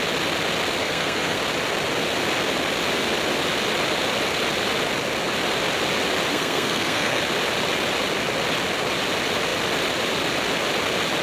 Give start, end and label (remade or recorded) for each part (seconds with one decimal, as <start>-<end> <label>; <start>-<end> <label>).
0.0-0.8 recorded; 0.8-1.4 remade; 1.4-6.3 recorded; 6.3-7.2 remade; 7.2-11.2 recorded